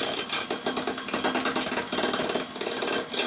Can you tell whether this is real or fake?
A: real